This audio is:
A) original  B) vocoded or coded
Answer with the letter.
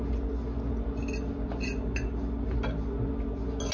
A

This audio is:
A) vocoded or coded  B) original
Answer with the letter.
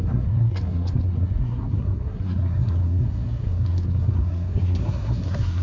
A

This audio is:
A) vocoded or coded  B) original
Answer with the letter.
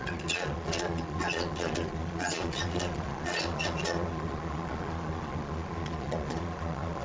A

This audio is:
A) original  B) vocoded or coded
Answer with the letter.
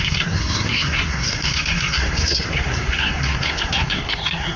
B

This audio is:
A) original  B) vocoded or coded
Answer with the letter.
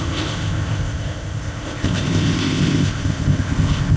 B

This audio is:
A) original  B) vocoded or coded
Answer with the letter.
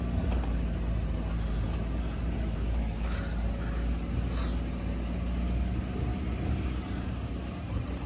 A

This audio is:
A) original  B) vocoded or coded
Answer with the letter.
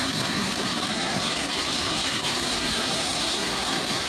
B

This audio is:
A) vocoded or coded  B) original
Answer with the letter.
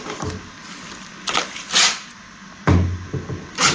B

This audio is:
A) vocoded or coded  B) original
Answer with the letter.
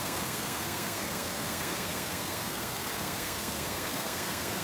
A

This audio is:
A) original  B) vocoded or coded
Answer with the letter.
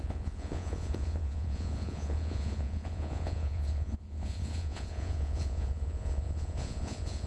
B